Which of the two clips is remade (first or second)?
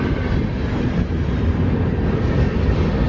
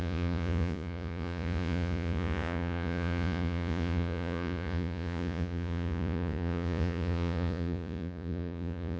second